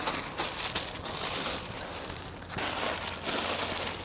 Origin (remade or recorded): recorded